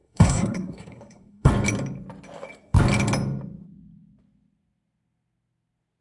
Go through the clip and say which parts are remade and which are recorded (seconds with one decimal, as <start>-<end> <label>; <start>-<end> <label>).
0.0-1.5 remade; 1.5-6.0 recorded